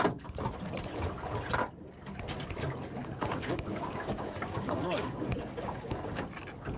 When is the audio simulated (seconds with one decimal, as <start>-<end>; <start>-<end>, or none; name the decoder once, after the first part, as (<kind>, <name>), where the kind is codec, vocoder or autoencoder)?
3.0-6.2 (codec, DAC)